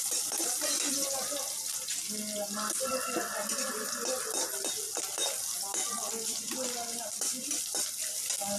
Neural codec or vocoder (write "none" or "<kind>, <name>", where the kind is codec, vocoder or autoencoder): none